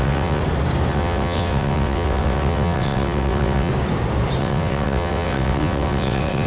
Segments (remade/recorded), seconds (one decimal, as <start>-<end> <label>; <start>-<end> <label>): 0.0-0.4 remade; 0.4-0.9 recorded; 0.9-3.7 remade; 3.7-4.4 recorded; 4.4-6.5 remade